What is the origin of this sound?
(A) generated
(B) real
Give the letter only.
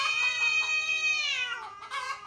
A